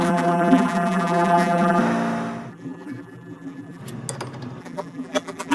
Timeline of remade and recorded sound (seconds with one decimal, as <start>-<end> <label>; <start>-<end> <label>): 0.0-1.8 remade; 1.8-2.5 recorded; 2.5-3.8 remade; 3.8-4.6 recorded; 4.6-5.5 remade